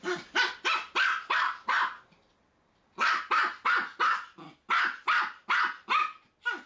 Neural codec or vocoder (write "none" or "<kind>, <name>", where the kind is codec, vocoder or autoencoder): none